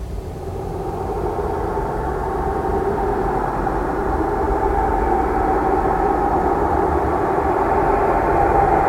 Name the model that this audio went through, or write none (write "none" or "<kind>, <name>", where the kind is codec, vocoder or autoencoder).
vocoder, BigVGAN v2